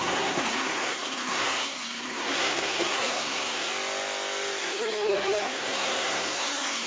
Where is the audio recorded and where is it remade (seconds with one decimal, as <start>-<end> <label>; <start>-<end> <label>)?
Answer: 0.0-3.7 remade; 3.7-4.6 recorded; 4.6-6.9 remade